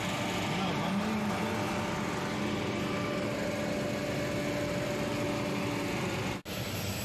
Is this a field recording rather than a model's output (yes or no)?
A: yes